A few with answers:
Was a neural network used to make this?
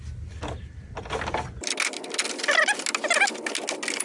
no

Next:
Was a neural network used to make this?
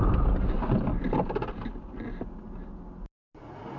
no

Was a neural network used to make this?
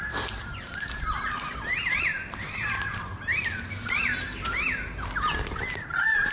yes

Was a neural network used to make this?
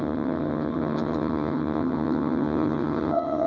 yes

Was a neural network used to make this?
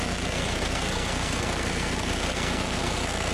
yes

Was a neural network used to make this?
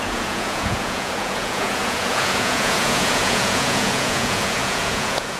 yes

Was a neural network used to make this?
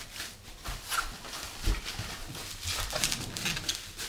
no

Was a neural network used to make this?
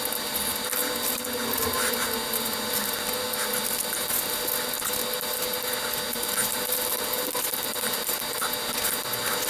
no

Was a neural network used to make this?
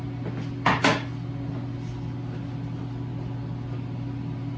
no